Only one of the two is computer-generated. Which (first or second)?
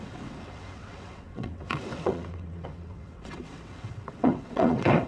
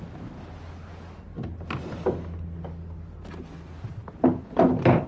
first